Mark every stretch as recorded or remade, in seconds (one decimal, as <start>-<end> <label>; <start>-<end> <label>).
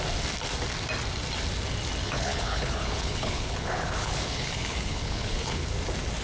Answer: 0.0-2.0 recorded; 2.0-5.7 remade; 5.7-6.2 recorded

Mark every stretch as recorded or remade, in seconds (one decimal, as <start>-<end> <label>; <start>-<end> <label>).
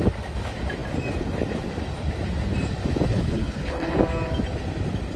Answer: 0.0-3.1 recorded; 3.1-4.0 remade; 4.0-5.2 recorded